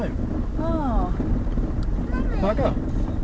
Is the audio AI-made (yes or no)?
no